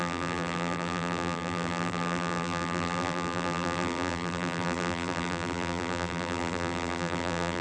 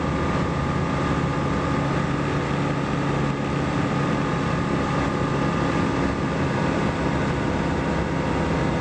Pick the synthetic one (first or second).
first